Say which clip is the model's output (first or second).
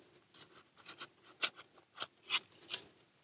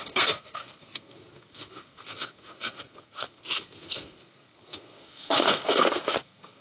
second